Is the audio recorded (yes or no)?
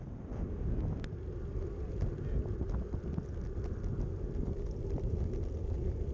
yes